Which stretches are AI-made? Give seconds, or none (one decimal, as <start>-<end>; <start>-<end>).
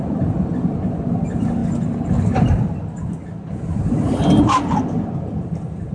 none